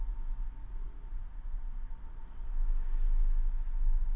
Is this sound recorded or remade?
recorded